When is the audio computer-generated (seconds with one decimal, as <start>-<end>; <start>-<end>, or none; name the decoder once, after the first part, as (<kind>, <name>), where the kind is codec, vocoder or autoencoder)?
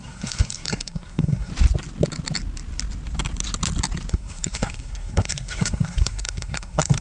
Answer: 0.0-1.5 (codec, SNAC); 4.1-7.0